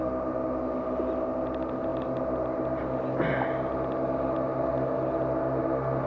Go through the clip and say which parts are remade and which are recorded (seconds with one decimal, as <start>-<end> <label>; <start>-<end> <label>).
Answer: 0.0-6.1 recorded